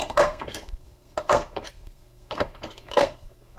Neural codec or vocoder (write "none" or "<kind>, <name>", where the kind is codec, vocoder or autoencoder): codec, SNAC